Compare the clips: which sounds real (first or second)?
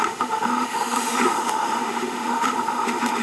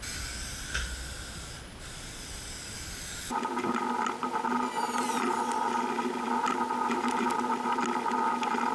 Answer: second